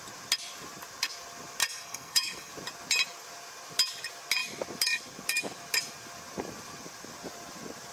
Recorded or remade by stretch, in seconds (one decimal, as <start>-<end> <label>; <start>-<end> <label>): 0.0-1.6 recorded; 1.6-2.5 remade; 2.5-7.9 recorded